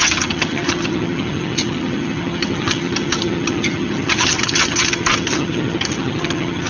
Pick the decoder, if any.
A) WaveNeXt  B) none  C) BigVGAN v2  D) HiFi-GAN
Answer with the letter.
D